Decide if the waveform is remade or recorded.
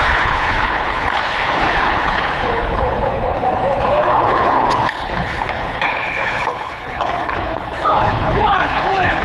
remade